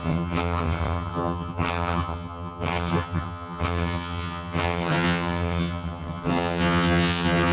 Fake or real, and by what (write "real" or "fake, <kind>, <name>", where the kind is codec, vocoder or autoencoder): fake, vocoder, HiFi-GAN